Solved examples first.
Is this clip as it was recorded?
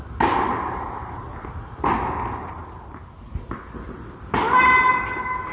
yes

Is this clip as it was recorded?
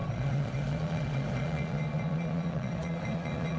no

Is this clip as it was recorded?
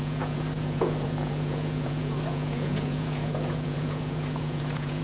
no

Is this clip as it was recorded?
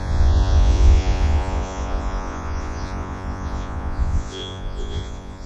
no